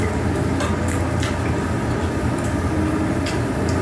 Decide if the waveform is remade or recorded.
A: recorded